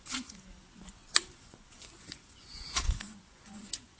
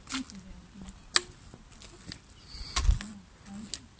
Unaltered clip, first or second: second